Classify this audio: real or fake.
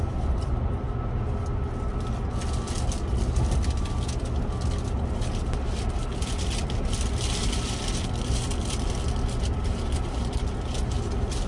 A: real